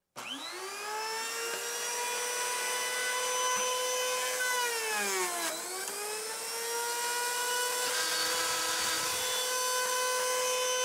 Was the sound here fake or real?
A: real